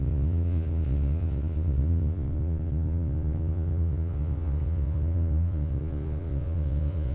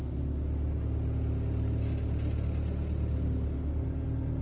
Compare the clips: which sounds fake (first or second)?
first